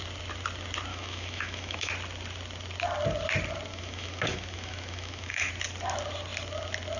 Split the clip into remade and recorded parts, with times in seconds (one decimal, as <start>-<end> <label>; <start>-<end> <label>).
0.0-0.9 recorded; 0.9-1.9 remade; 1.9-3.7 recorded; 3.7-5.5 remade; 5.5-7.0 recorded